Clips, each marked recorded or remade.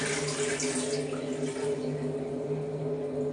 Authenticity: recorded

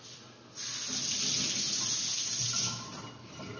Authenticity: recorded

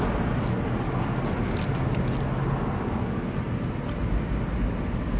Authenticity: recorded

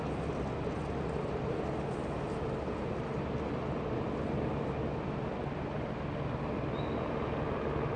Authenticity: recorded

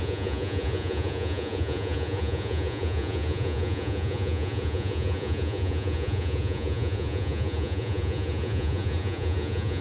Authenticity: remade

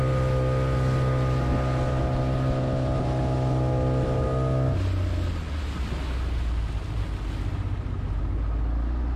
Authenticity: recorded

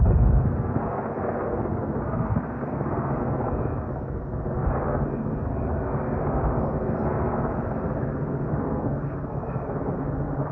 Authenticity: remade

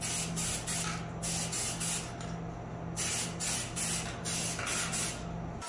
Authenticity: recorded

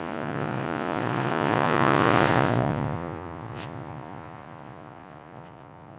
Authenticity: remade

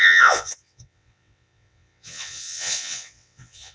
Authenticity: remade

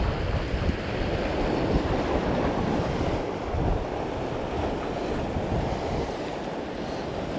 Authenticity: recorded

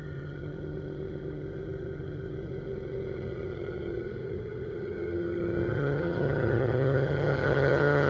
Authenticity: remade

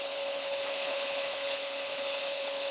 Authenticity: remade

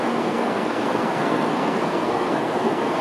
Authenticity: remade